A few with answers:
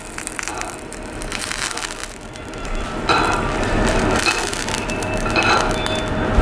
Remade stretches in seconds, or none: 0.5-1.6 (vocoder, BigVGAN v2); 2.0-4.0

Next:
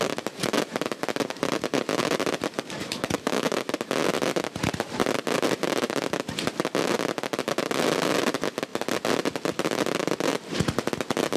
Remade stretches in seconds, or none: 2.8-3.6 (autoencoder, DAC-VAE)

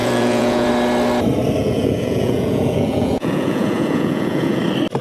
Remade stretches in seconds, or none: 0.0-0.7 (vocoder, Vocos); 1.6-4.6

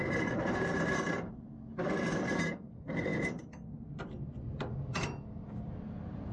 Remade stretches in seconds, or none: none